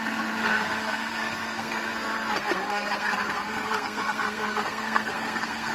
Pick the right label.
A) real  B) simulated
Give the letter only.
B